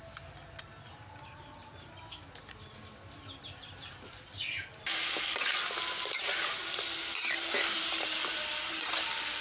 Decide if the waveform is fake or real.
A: real